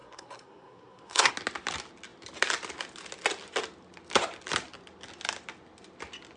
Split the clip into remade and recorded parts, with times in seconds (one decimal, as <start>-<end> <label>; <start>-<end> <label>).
0.0-1.3 remade; 1.3-6.4 recorded

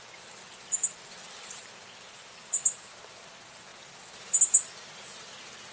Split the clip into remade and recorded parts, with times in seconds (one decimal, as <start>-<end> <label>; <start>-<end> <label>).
0.0-0.5 recorded; 0.5-3.3 remade; 3.3-5.7 recorded